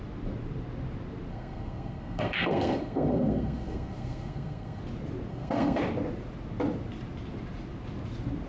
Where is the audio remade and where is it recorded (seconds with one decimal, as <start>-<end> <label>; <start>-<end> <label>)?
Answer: 0.0-1.3 recorded; 1.3-4.8 remade; 4.8-5.3 recorded; 5.3-5.8 remade; 5.8-8.5 recorded